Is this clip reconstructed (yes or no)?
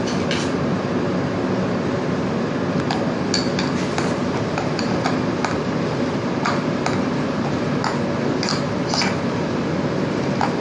no